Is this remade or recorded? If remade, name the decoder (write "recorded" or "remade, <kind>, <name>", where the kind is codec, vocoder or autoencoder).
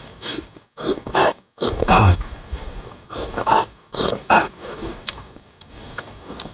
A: remade, codec, DAC